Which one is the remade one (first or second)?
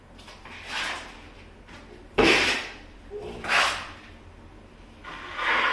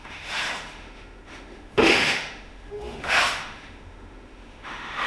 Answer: second